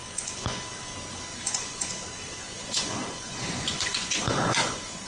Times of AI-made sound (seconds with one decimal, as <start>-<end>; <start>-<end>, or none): 0.0-0.6; 1.3-1.9; 2.4-5.1